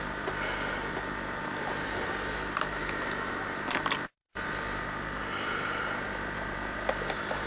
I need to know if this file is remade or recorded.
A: remade